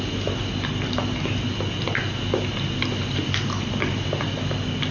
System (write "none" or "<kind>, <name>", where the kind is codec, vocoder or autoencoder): none